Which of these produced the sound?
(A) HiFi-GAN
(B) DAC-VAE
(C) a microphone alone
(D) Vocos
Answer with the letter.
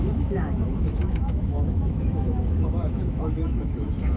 B